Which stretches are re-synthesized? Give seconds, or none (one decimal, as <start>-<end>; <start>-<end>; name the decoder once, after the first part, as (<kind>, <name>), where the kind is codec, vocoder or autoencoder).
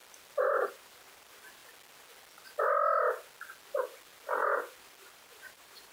0.7-1.6 (vocoder, BigVGAN v2); 5.1-5.9